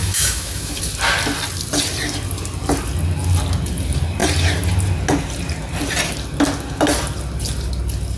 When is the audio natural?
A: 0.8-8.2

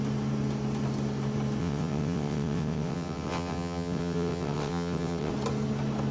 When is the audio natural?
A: 0.0-1.6; 5.3-6.1

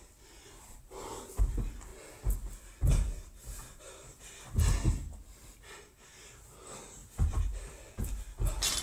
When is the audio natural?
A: 0.0-8.8

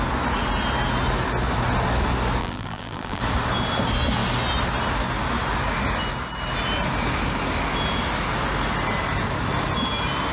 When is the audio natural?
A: 0.0-2.4; 3.2-10.3

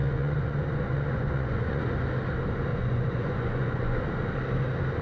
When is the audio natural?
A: 1.9-2.7; 4.0-5.0

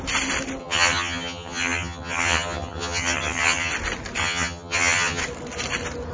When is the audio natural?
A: 0.0-0.6; 3.7-4.2; 5.2-6.1